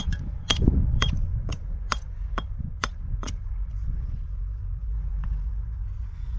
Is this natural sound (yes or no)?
no